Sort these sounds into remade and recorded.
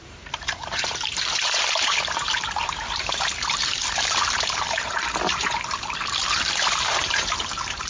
remade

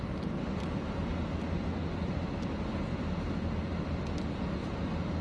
recorded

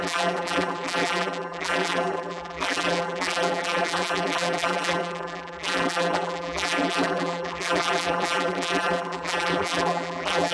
remade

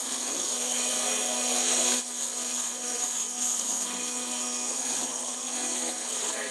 remade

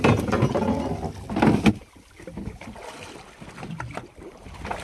recorded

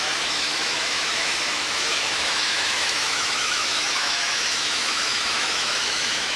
remade